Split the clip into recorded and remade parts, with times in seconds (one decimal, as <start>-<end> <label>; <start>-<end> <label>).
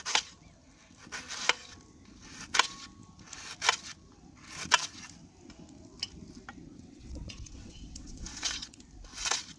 0.0-6.7 recorded; 6.7-8.8 remade; 8.8-9.6 recorded